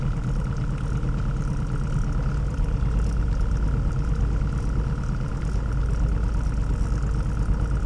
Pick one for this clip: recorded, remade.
recorded